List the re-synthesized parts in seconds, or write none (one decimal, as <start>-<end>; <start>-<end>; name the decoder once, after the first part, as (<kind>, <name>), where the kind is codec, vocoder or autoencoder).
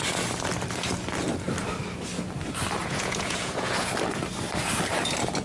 2.8-3.9 (vocoder, Vocos)